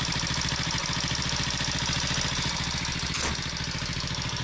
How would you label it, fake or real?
real